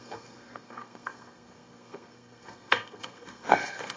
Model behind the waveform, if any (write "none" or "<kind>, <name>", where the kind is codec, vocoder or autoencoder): codec, SNAC